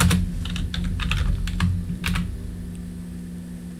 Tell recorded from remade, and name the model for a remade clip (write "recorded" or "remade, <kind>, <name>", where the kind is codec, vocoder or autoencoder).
recorded